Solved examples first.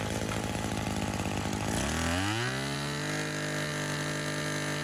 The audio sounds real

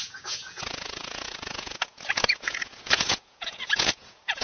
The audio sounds fake